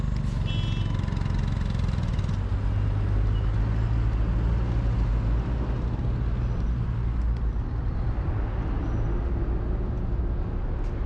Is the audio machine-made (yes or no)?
no